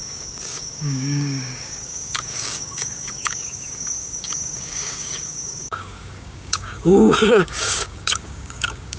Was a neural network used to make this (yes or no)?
yes